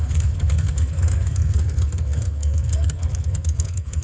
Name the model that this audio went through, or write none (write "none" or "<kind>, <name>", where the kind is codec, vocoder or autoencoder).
codec, SNAC